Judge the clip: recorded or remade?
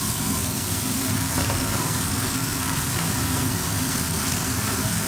remade